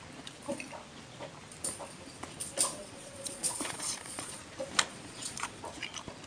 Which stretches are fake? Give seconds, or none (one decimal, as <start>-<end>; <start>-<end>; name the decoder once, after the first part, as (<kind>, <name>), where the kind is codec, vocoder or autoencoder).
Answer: 2.8-4.4 (vocoder, Vocos); 4.9-5.6